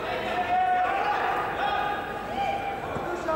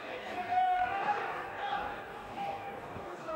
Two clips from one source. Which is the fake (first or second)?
second